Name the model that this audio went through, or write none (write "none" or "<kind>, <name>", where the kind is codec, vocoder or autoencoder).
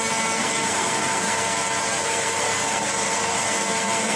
codec, SNAC